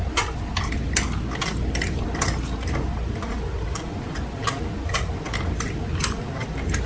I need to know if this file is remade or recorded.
recorded